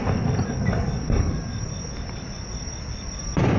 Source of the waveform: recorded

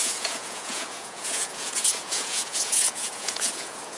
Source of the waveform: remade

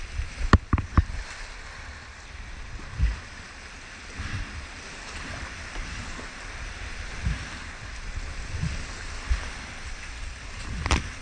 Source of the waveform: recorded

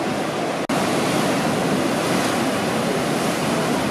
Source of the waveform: recorded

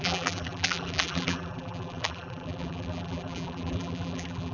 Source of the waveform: remade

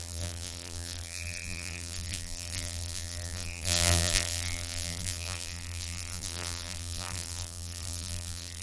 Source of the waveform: remade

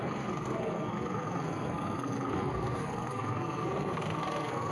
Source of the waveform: remade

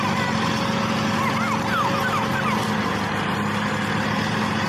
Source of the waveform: recorded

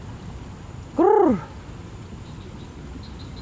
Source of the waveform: recorded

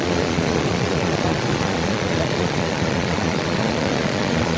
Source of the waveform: remade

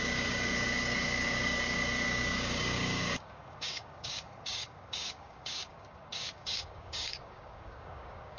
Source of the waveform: remade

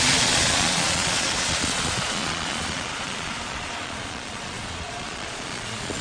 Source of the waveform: remade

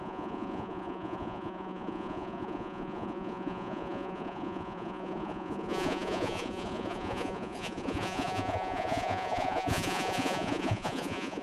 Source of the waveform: remade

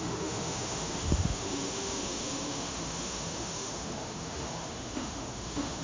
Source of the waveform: remade